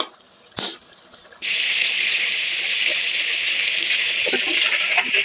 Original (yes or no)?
yes